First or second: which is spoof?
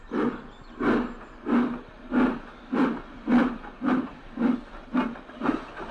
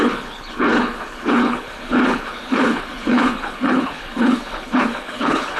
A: second